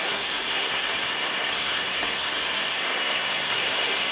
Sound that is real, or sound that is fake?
fake